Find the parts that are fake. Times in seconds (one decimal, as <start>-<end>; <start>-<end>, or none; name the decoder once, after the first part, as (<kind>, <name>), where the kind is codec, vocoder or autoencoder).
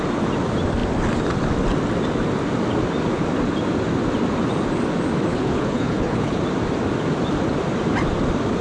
5.3-6.4 (codec, HILCodec)